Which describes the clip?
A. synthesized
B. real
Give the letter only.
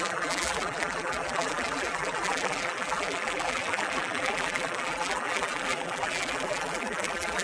A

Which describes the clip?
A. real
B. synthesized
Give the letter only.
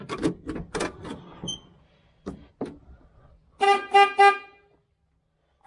A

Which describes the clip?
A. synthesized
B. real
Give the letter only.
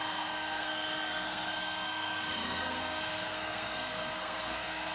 A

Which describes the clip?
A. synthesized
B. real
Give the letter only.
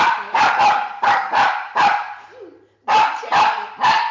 B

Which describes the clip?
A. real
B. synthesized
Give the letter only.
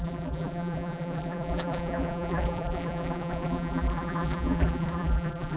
B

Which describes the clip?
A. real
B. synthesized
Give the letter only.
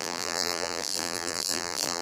B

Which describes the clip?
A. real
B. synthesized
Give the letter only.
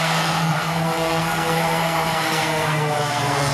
B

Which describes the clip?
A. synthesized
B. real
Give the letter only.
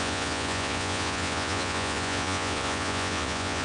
A